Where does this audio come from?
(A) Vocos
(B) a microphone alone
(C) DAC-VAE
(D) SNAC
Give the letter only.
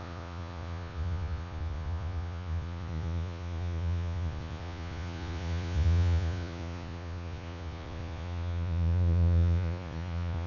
A